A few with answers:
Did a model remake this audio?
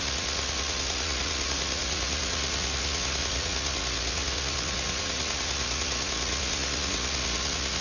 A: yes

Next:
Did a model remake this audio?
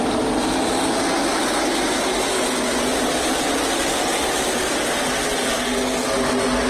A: no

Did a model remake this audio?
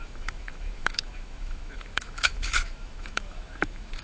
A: yes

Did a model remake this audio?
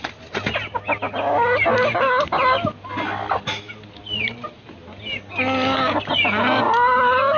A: no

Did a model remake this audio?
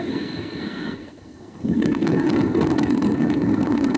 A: yes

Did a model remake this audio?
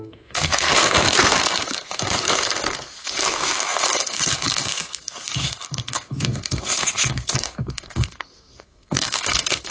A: yes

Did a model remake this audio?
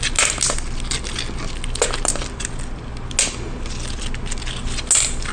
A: no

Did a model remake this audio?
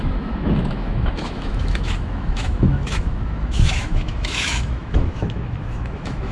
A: yes